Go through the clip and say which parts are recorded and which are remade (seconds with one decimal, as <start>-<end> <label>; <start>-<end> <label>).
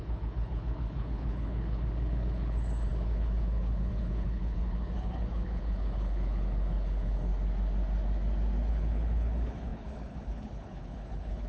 0.0-7.3 remade; 7.3-8.7 recorded; 8.7-11.5 remade